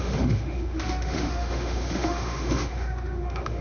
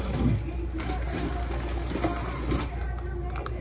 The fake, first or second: first